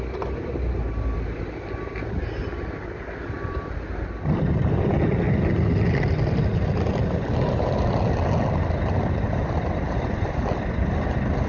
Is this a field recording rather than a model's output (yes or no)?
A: yes